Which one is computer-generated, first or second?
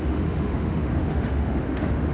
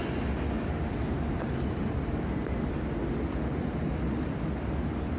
first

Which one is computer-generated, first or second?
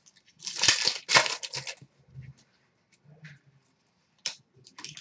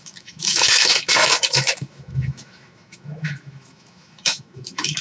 second